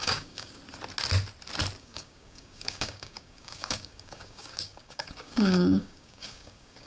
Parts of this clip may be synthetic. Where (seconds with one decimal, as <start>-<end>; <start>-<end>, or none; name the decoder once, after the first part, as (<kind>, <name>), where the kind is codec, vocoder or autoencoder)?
0.0-0.6 (codec, DAC); 1.8-6.9